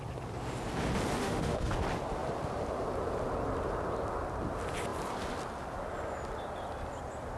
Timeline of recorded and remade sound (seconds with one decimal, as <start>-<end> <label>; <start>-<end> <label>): 0.0-1.2 recorded; 1.2-1.7 remade; 1.7-7.4 recorded